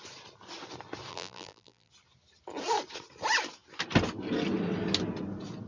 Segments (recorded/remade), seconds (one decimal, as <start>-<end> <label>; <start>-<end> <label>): 0.0-1.1 recorded; 1.1-1.9 remade; 1.9-5.7 recorded